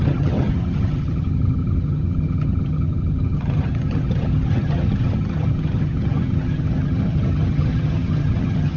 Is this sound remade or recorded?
remade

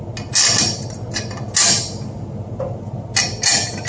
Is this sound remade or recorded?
recorded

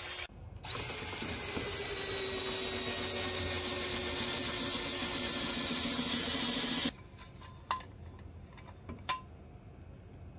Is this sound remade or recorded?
recorded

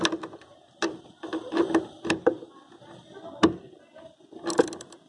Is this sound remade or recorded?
recorded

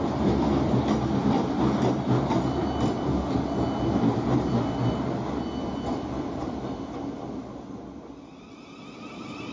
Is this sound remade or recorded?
recorded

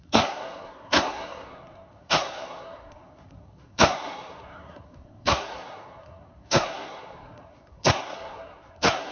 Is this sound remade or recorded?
remade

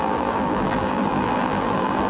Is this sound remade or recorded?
remade